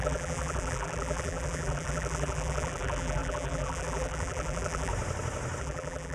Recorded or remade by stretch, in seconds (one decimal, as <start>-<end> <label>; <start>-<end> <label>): 0.0-4.9 remade; 4.9-5.6 recorded; 5.6-6.1 remade